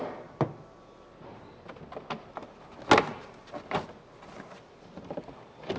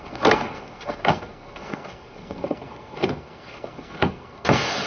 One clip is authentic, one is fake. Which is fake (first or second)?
second